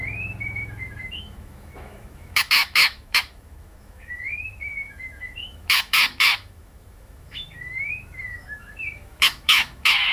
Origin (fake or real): fake